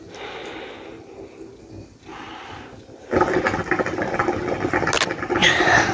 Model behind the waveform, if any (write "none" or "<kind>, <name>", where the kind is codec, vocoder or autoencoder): none